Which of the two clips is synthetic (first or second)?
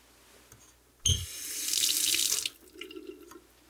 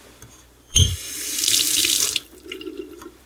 second